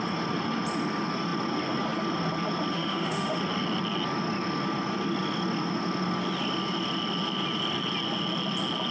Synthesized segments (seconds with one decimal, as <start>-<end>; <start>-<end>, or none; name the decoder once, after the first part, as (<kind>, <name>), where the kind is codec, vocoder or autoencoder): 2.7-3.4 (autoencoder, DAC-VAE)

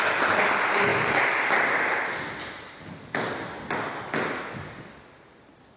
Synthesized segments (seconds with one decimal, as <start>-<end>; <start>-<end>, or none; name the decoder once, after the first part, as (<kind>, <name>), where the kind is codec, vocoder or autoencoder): none

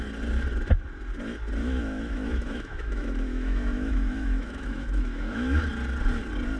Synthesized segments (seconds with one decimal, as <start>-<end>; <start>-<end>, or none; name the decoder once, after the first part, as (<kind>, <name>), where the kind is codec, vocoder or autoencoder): 1.6-5.6 (autoencoder, DAC-VAE)

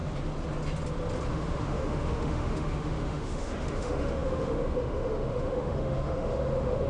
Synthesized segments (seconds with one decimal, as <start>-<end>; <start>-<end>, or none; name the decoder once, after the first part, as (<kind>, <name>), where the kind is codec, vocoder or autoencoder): 1.3-6.9 (autoencoder, DAC-VAE)

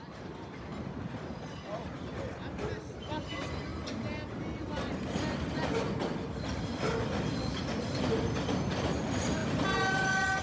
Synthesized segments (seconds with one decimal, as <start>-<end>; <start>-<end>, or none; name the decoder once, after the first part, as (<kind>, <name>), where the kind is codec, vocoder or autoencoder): none

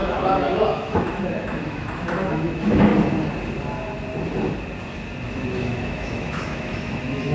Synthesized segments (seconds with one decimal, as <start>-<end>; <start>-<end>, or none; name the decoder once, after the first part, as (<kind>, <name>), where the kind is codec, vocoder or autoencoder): 0.0-2.9 (autoencoder, DAC-VAE); 5.3-7.3